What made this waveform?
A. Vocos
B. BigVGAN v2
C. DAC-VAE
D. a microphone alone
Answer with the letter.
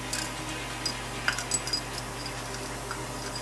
D